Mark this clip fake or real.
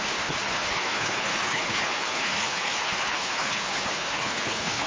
fake